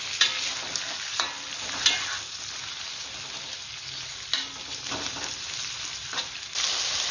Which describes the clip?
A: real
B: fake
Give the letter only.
A